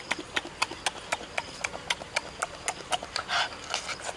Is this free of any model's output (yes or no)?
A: yes